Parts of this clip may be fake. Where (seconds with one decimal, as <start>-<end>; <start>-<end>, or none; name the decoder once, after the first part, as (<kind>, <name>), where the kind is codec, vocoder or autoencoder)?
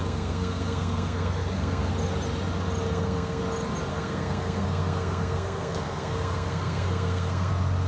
0.0-1.9 (codec, SNAC); 2.9-3.4; 3.9-7.5